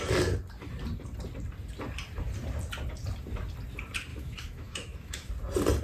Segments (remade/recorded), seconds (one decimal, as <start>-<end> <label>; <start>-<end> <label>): 0.0-4.1 recorded; 4.1-5.3 remade; 5.3-5.8 recorded